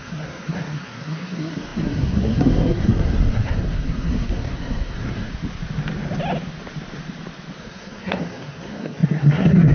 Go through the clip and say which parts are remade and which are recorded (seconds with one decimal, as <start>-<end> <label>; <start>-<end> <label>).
0.0-5.3 remade; 5.3-7.6 recorded; 7.6-9.7 remade

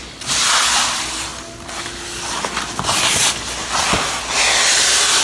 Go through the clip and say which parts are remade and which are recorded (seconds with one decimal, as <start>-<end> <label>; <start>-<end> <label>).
0.0-5.2 recorded

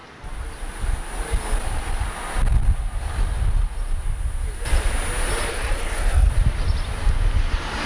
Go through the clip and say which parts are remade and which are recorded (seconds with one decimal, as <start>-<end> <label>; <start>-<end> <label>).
0.0-5.5 recorded; 5.5-6.3 remade; 6.3-7.9 recorded

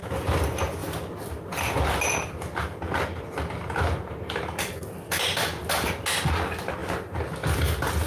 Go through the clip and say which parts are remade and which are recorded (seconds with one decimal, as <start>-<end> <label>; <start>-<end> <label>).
0.0-8.1 recorded

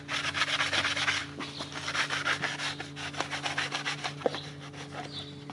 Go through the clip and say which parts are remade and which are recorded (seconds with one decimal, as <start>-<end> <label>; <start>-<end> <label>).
0.0-5.5 recorded

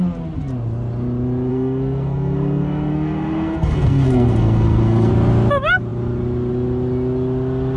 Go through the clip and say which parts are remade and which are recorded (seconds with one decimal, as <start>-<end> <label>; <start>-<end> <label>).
0.0-1.5 recorded; 1.5-5.1 remade; 5.1-7.8 recorded

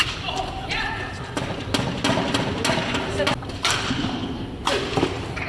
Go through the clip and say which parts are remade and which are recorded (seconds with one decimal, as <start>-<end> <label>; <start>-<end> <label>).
0.0-5.5 recorded